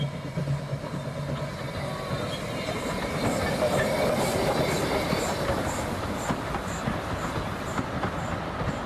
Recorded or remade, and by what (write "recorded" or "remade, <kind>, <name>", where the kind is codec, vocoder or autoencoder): recorded